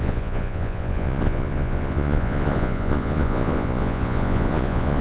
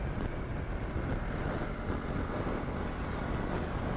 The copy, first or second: first